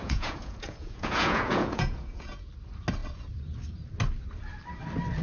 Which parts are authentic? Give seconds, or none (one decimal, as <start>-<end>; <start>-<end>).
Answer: 2.5-5.2